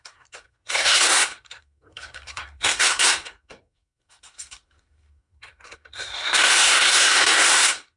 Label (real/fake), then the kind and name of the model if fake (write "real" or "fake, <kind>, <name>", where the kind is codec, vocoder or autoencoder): fake, codec, SNAC